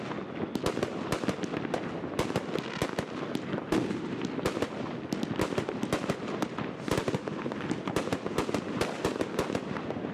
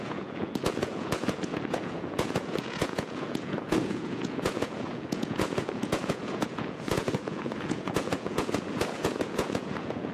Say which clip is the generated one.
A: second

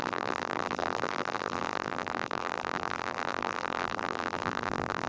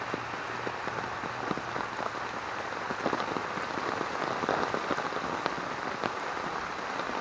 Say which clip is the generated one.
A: first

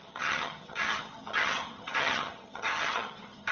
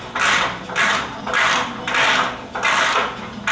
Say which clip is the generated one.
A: first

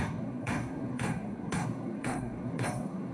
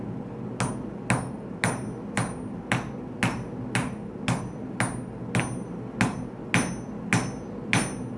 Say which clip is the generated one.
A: first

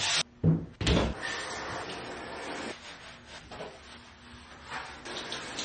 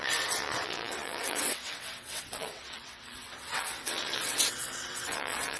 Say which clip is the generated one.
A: second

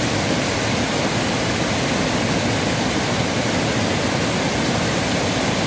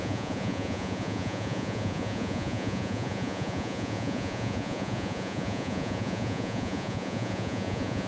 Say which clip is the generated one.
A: second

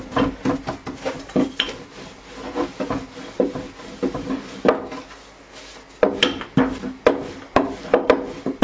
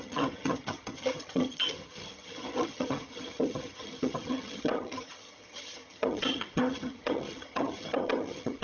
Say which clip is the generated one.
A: second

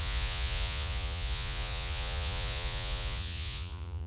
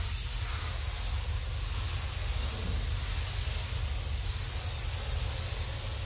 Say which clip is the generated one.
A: first